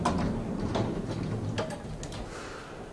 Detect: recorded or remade recorded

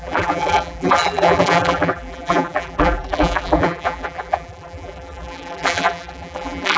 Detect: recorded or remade remade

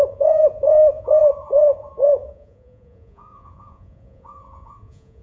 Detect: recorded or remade remade